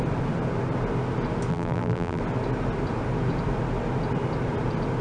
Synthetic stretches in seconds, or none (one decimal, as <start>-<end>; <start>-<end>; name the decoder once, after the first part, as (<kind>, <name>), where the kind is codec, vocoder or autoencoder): 1.5-2.2 (vocoder, BigVGAN v2)